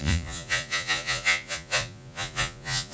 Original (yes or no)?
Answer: no